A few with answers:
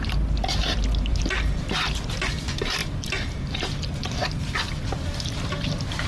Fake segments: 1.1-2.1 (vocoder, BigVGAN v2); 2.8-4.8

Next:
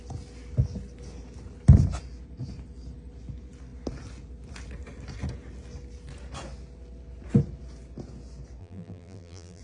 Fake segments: 8.6-9.6 (vocoder, BigVGAN v2)

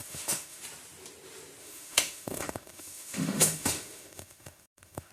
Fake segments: 0.0-0.6 (autoencoder, DAC-VAE); 1.6-5.1

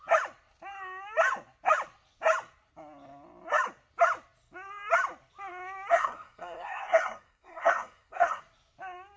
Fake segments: 5.9-8.4 (codec, SNAC)

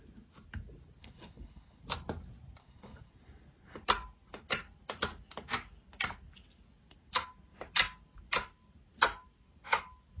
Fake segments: 1.0-1.8 (codec, HILCodec); 2.6-3.1

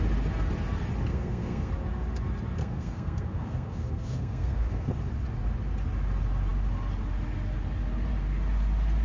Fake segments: 1.1-1.7 (codec, SNAC); 2.6-4.9

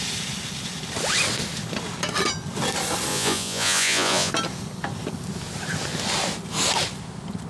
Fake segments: 3.1-4.3 (vocoder, Vocos)